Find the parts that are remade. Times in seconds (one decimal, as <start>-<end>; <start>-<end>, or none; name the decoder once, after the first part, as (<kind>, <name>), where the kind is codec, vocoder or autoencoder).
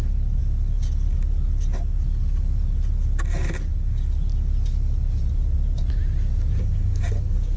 none